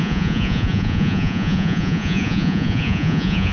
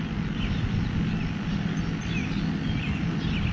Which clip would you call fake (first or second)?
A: first